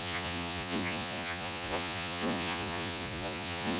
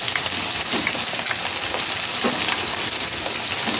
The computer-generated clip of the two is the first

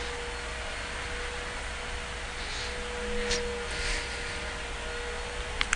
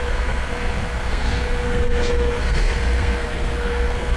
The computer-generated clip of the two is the second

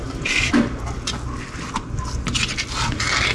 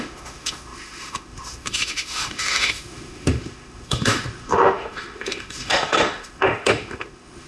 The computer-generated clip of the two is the second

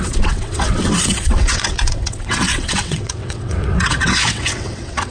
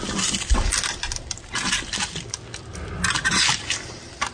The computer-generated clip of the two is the first